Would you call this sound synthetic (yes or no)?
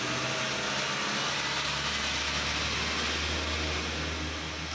no